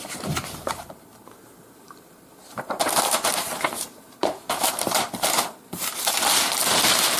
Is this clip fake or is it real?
fake